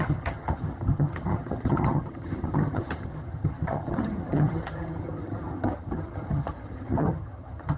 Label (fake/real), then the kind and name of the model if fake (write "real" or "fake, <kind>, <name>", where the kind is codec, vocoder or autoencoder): fake, vocoder, HiFi-GAN